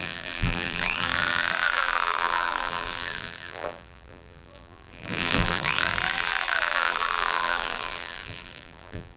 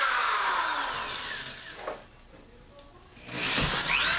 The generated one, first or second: first